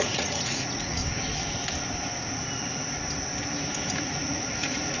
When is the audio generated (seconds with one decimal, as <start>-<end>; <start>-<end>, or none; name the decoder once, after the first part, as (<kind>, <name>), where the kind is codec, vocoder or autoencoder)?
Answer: 0.0-1.0 (vocoder, Vocos); 4.0-5.0